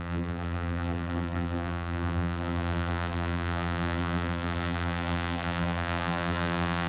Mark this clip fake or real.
fake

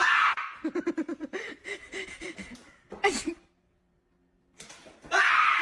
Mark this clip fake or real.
real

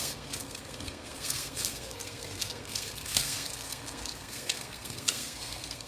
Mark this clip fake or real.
fake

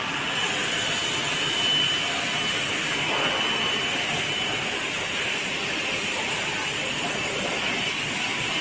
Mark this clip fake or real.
real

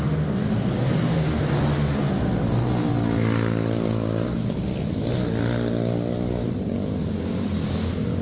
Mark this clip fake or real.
real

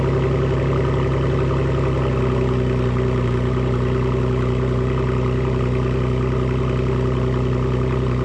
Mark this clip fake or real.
real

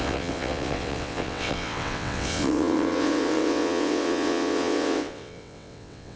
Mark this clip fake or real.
fake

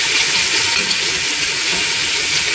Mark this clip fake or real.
real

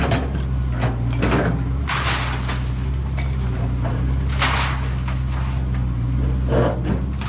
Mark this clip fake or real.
real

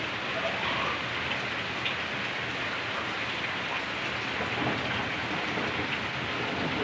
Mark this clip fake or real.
real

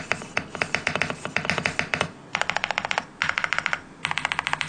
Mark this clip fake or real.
real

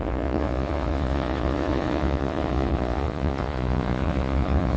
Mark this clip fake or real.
fake